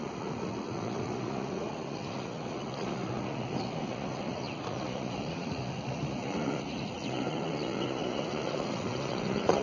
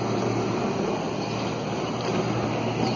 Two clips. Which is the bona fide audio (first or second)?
second